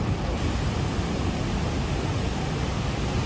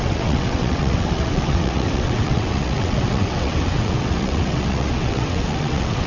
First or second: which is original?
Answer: first